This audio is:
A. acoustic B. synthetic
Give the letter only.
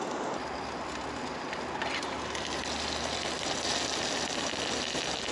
A